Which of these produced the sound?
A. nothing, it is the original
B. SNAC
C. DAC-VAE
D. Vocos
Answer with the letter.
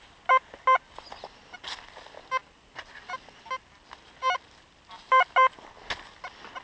A